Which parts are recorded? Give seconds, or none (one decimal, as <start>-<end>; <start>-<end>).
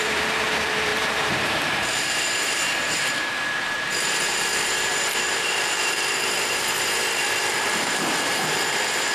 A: none